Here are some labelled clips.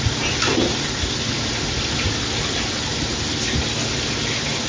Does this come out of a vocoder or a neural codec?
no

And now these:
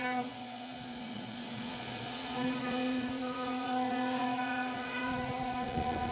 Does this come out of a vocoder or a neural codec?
yes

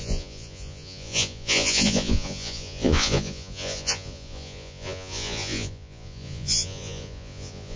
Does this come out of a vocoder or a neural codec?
yes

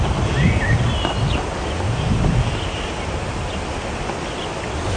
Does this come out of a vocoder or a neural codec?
no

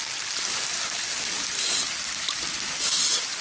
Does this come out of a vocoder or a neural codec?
no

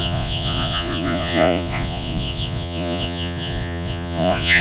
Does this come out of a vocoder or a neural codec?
yes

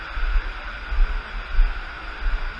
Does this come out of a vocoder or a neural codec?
no